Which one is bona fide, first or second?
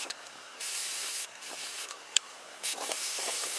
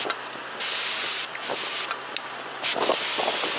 second